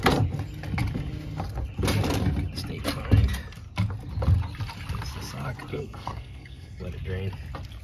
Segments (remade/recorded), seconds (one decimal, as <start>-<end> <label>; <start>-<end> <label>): 0.0-5.7 recorded; 5.7-6.8 remade; 6.8-7.8 recorded